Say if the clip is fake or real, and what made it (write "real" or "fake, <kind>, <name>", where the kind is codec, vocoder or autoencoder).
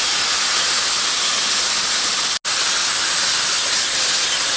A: real